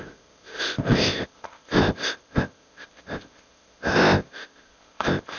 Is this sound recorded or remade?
remade